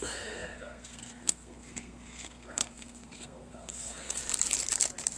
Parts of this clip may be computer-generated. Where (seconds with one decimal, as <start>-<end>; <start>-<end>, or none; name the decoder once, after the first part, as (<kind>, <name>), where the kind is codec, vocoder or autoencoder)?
0.0-4.2 (codec, SNAC)